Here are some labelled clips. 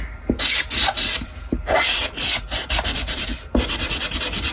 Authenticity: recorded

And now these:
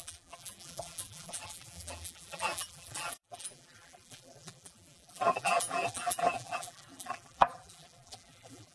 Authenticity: remade